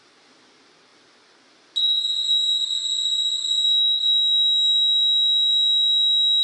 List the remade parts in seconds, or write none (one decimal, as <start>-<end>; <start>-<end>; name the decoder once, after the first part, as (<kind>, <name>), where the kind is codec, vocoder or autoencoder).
none